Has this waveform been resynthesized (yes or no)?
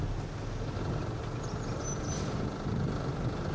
no